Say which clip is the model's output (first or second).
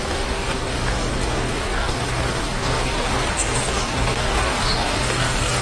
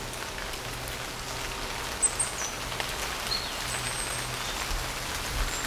first